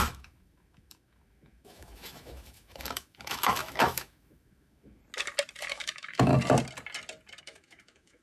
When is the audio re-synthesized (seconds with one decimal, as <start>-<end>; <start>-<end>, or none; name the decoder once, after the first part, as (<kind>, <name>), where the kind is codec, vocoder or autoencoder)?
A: 0.0-5.0 (autoencoder, DAC-VAE); 5.7-6.3; 7.4-8.2